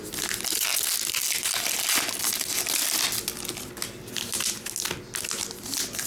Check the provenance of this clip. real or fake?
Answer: real